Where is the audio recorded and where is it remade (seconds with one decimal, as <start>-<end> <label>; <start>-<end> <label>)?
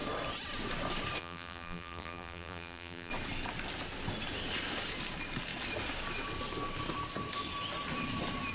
0.0-1.2 recorded; 1.2-3.1 remade; 3.1-8.5 recorded